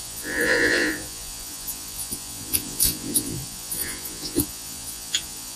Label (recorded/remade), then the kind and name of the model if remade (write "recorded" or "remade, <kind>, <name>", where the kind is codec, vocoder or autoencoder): remade, vocoder, Vocos